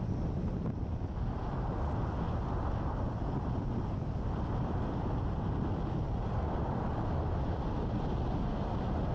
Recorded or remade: recorded